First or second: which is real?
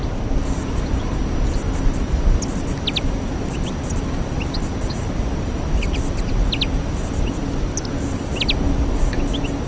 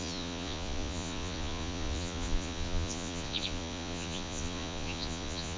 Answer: first